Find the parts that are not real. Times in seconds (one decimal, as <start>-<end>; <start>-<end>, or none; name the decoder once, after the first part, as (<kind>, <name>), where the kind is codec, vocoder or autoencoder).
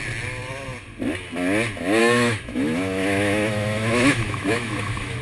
2.0-5.2 (autoencoder, DAC-VAE)